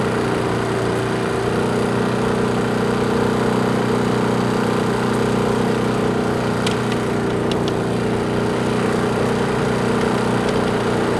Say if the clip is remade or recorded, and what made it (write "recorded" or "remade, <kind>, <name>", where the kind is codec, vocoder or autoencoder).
recorded